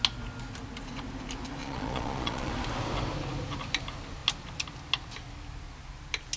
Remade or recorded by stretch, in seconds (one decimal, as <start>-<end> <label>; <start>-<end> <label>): 0.0-1.6 recorded; 1.6-2.5 remade; 2.5-6.4 recorded